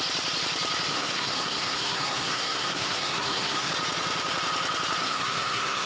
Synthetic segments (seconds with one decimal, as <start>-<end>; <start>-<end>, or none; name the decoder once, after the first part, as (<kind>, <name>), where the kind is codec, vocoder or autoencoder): 0.9-3.7 (codec, SNAC); 5.0-5.9